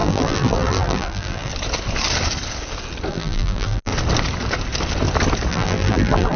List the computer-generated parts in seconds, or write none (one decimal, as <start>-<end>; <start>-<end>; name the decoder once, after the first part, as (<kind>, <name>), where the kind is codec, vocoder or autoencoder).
0.0-1.5 (vocoder, BigVGAN v2); 3.1-3.9; 5.5-6.4